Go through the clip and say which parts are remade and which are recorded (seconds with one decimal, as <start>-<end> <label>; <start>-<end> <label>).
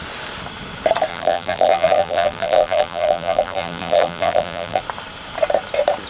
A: 0.0-1.1 recorded; 1.1-4.8 remade; 4.8-6.1 recorded